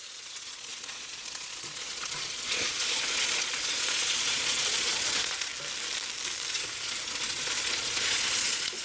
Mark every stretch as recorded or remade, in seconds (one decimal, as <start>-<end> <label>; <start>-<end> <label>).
0.0-5.5 remade; 5.5-6.5 recorded; 6.5-8.8 remade